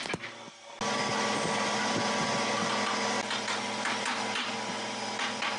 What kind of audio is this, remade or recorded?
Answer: recorded